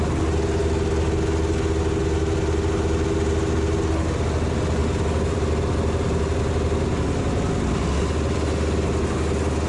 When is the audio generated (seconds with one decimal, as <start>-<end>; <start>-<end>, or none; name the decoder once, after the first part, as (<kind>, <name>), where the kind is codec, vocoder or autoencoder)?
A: none